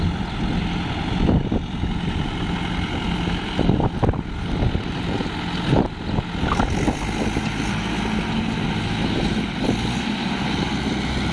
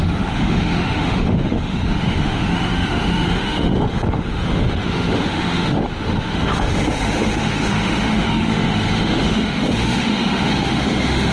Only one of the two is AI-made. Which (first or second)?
second